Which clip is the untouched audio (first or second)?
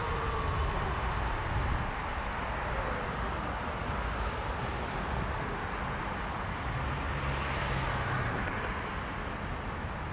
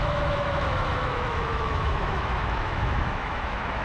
first